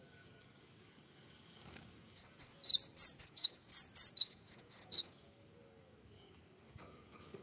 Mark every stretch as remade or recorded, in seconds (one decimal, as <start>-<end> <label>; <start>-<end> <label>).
0.0-2.7 remade; 2.7-3.2 recorded; 3.2-3.7 remade; 3.7-4.2 recorded; 4.2-7.4 remade